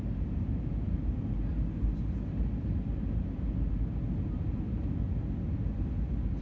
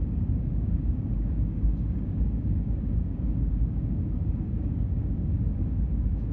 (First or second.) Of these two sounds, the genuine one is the first